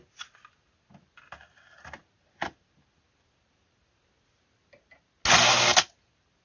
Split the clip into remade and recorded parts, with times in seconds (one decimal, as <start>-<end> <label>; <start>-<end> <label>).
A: 0.0-6.4 recorded